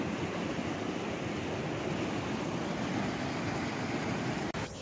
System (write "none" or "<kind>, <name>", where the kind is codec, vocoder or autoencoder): none